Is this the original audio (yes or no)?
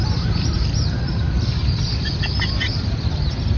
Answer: yes